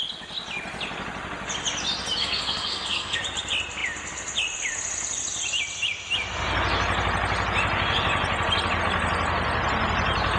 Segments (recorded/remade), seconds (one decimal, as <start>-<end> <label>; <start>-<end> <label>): 0.0-2.2 recorded; 2.2-3.2 remade; 3.2-10.4 recorded